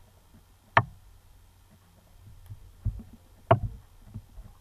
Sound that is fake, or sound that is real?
real